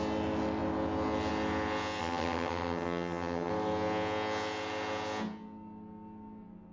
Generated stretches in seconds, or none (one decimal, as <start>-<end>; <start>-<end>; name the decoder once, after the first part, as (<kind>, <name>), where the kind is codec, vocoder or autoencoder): 2.0-3.5 (vocoder, HiFi-GAN)